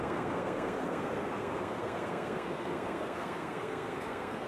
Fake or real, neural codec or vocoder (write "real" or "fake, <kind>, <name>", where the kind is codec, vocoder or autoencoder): fake, codec, SNAC